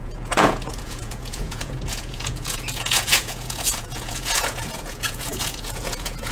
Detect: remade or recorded remade